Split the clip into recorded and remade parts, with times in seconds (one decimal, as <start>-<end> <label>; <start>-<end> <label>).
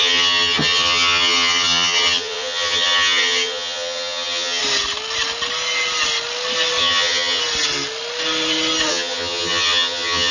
0.0-4.6 remade; 4.6-6.8 recorded; 6.8-7.4 remade; 7.4-8.9 recorded; 8.9-10.3 remade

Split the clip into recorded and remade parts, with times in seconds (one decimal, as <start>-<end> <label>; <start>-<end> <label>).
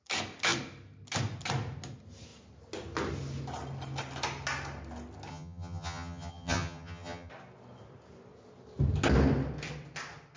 0.0-5.3 recorded; 5.3-7.3 remade; 7.3-10.4 recorded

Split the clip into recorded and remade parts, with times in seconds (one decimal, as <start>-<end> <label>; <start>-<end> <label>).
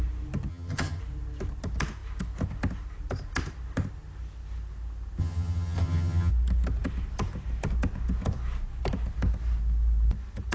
0.0-0.5 recorded; 0.5-1.0 remade; 1.0-5.2 recorded; 5.2-6.3 remade; 6.3-10.5 recorded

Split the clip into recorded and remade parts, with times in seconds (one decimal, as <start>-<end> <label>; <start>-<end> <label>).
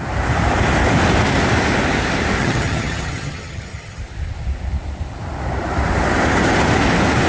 0.0-2.4 recorded; 2.4-4.0 remade; 4.0-7.3 recorded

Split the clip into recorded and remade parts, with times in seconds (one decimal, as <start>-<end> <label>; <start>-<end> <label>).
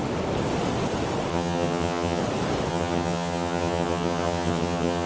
0.0-1.3 recorded; 1.3-2.2 remade; 2.2-2.7 recorded; 2.7-5.1 remade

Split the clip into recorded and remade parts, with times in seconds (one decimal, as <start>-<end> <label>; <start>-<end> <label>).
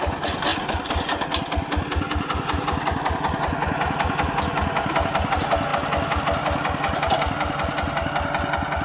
0.0-8.8 recorded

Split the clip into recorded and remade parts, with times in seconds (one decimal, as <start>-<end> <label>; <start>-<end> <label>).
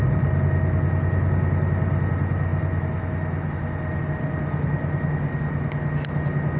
0.0-6.6 recorded